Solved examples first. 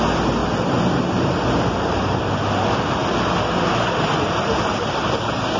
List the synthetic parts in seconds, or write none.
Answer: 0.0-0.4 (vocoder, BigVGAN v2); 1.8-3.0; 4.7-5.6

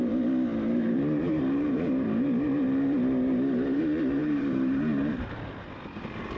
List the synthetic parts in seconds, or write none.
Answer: 0.5-3.8 (vocoder, BigVGAN v2); 4.2-5.1

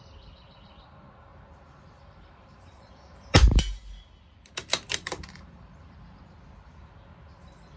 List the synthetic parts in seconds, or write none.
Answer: 1.3-3.6 (vocoder, BigVGAN v2); 4.9-6.2

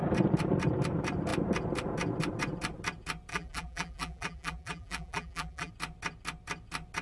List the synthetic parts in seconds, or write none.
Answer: 3.3-5.7 (vocoder, BigVGAN v2)

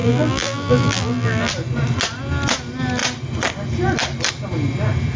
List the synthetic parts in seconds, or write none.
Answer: 0.0-1.5 (vocoder, BigVGAN v2)

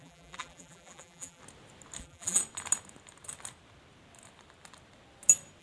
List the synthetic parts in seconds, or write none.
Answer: 0.0-1.4 (vocoder, BigVGAN v2); 2.0-2.4